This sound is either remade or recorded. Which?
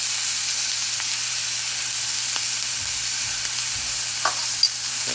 recorded